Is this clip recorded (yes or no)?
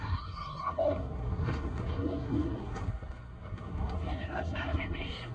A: no